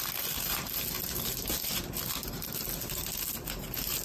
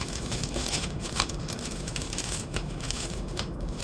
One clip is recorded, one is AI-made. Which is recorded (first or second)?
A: first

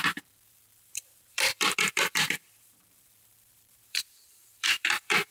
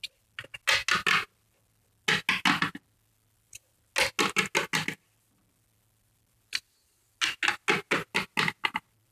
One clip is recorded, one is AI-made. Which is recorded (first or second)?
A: second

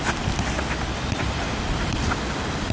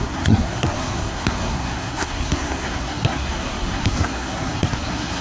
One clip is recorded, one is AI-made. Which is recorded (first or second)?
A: first